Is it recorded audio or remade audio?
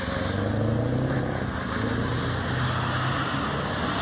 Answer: recorded